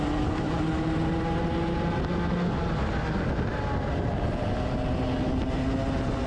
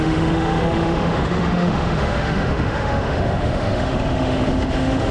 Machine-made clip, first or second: second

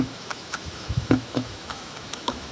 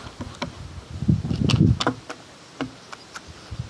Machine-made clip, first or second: first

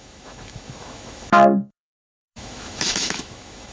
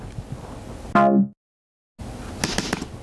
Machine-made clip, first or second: first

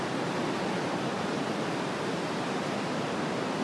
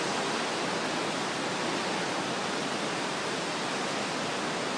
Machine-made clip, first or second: first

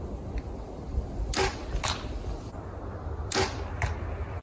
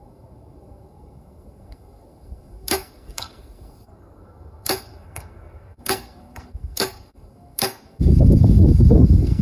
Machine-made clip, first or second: second